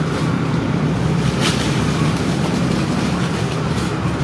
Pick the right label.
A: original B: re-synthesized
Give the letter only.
B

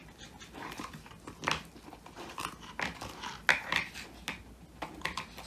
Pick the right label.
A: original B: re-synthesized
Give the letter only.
A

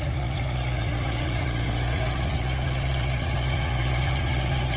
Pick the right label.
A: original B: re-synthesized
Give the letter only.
B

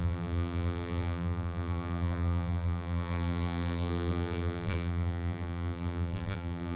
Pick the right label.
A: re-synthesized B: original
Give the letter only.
A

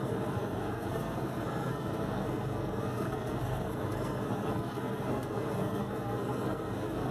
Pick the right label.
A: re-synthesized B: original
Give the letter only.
A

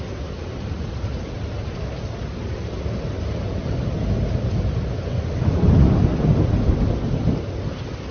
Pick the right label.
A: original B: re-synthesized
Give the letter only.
A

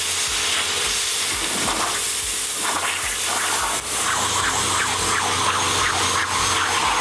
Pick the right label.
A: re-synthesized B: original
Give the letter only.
B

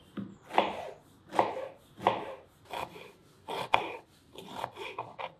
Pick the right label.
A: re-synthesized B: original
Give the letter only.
B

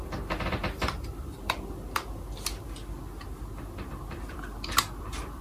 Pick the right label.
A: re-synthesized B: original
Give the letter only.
B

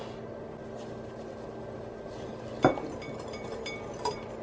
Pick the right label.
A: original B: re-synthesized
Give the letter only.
A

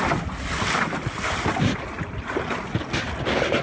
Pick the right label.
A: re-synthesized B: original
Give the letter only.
B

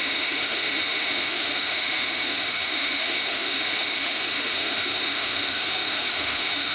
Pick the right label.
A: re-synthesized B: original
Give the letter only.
A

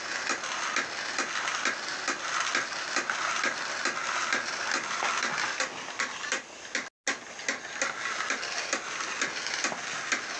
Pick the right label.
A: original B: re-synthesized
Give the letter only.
A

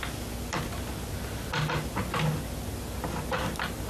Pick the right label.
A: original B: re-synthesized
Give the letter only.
A